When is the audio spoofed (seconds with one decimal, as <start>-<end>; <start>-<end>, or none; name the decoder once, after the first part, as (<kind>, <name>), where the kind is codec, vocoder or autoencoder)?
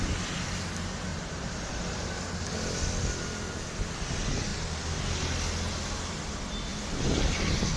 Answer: 1.1-1.7 (vocoder, BigVGAN v2)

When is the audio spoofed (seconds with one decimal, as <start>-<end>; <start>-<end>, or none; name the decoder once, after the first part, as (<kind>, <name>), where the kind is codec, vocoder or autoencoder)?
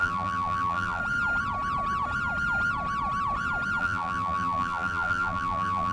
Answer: 0.0-1.0 (vocoder, BigVGAN v2); 3.8-5.9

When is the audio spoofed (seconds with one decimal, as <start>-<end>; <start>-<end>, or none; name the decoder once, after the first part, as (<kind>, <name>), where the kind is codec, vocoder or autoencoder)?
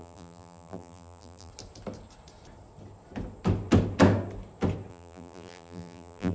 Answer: 0.0-1.5 (vocoder, BigVGAN v2); 4.9-6.3